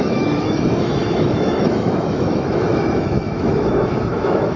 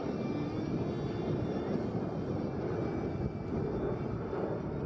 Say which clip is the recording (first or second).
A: second